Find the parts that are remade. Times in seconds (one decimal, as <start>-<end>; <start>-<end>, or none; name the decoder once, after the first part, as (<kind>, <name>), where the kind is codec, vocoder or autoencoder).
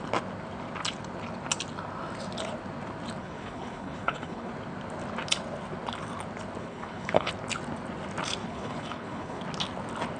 3.2-4.5 (codec, HILCodec); 6.6-7.3; 8.4-9.4